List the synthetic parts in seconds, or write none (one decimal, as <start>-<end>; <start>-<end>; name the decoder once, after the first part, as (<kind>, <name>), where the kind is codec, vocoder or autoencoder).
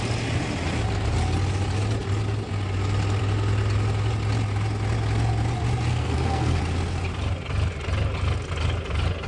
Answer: 5.9-6.6 (codec, SNAC)